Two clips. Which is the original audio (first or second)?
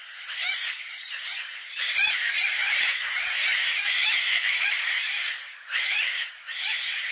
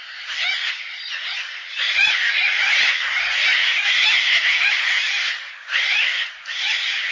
second